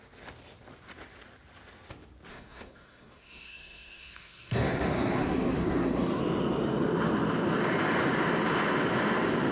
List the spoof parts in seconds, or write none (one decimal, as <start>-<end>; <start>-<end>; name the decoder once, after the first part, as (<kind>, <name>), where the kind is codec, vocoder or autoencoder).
2.3-6.2 (codec, SNAC)